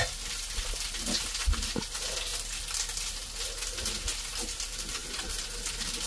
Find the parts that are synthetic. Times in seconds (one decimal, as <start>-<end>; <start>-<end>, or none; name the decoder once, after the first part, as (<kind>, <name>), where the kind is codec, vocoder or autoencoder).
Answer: none